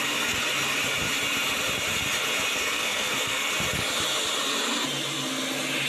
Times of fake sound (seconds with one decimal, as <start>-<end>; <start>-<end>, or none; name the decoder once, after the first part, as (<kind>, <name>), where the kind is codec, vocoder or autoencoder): 2.5-3.5 (codec, SNAC)